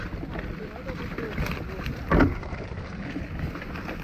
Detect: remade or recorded recorded